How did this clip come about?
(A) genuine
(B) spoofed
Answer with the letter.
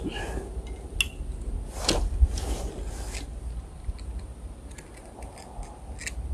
A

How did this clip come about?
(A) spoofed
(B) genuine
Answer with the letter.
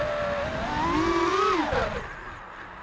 B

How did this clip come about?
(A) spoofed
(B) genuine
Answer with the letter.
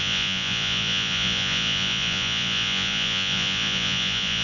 A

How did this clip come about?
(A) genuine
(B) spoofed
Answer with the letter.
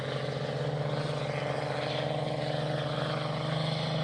A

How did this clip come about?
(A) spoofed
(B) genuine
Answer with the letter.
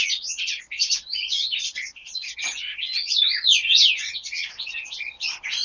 A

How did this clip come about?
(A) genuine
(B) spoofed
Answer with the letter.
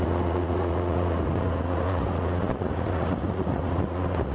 B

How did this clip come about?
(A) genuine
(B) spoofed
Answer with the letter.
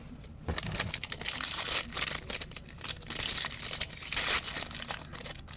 A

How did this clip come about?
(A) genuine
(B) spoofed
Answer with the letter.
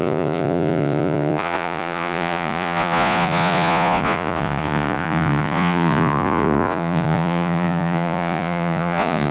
B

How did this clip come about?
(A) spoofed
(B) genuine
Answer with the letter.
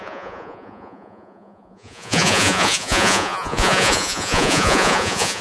A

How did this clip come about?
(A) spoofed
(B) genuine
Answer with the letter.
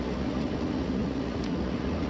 A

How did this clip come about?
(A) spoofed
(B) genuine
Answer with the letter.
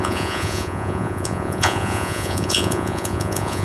A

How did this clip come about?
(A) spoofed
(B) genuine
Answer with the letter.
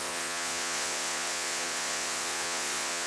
A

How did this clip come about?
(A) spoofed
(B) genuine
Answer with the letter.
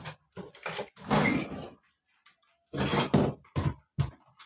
B